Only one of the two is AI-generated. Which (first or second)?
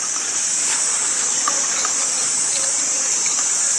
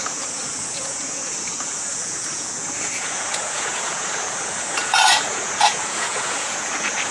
second